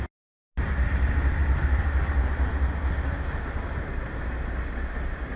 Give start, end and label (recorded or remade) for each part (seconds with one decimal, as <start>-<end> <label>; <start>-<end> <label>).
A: 0.0-5.4 recorded